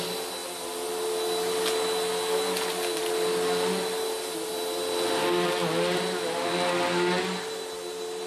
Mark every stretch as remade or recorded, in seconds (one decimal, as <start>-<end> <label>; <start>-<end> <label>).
0.0-8.3 recorded